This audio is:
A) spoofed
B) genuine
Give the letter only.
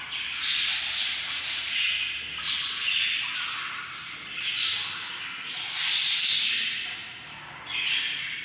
B